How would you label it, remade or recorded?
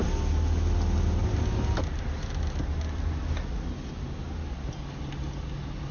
recorded